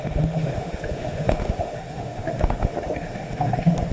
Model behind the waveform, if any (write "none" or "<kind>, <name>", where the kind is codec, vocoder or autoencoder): autoencoder, DAC-VAE